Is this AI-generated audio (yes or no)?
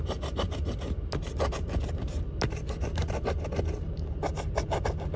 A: no